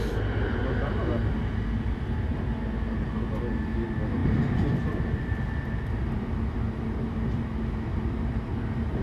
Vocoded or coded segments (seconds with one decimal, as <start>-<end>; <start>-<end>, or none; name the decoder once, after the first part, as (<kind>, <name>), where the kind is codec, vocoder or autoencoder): 4.2-6.6 (vocoder, BigVGAN v2)